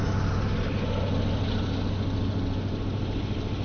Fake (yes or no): no